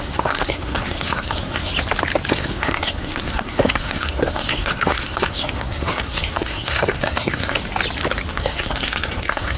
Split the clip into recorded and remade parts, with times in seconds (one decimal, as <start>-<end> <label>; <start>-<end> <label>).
0.0-1.7 remade; 1.7-2.3 recorded; 2.3-7.6 remade; 7.6-8.3 recorded; 8.3-9.6 remade

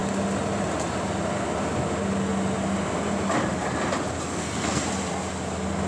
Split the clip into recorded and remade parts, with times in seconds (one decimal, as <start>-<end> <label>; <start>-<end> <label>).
0.0-4.3 recorded; 4.3-4.8 remade; 4.8-5.9 recorded